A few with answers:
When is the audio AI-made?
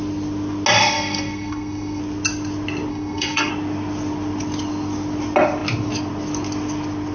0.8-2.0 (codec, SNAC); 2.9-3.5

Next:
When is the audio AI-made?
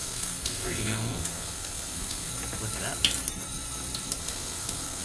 0.0-2.3 (codec, SNAC); 4.2-5.0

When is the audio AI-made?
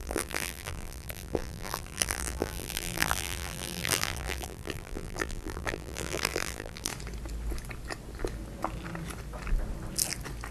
0.0-6.9 (vocoder, BigVGAN v2)